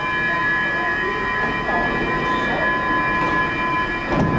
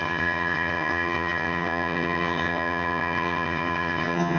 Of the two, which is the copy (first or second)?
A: second